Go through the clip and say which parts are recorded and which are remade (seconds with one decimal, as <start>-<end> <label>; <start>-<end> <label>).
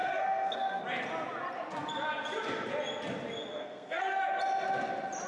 0.0-0.8 remade; 0.8-3.5 recorded; 3.5-4.2 remade; 4.2-5.3 recorded